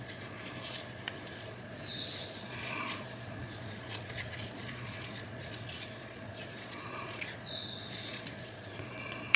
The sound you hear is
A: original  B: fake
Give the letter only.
B